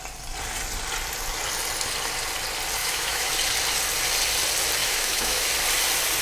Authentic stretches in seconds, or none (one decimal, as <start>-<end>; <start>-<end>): 0.0-2.8; 3.3-4.8; 5.5-6.2